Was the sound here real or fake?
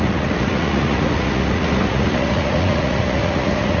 fake